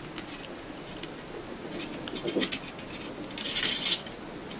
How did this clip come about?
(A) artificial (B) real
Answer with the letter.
B